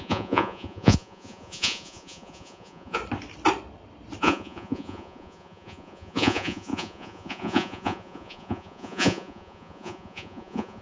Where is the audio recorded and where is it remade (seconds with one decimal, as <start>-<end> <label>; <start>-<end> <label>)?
0.0-3.0 remade; 3.0-4.2 recorded; 4.2-10.8 remade